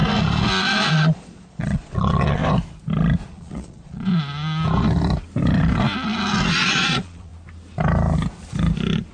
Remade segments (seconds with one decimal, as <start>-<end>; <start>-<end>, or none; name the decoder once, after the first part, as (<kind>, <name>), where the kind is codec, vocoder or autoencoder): 0.9-2.4 (vocoder, Vocos); 3.3-4.1; 6.5-7.3